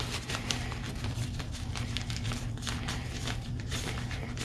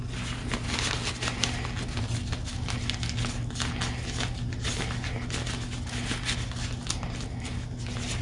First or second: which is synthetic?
first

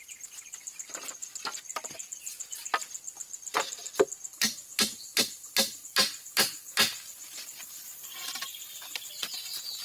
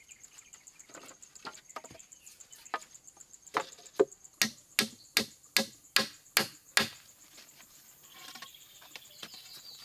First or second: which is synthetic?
first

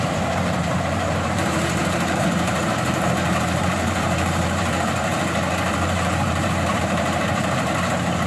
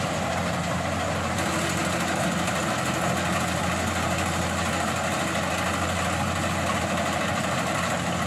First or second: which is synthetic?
first